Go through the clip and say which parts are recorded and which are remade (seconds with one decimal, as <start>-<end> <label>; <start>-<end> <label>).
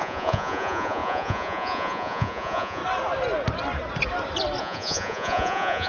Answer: 0.0-2.8 remade; 2.8-4.6 recorded; 4.6-5.9 remade